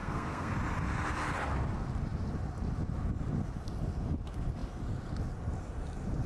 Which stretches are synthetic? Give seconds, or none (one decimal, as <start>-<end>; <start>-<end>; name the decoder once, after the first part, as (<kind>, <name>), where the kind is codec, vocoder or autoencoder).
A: 0.0-0.5 (codec, SNAC)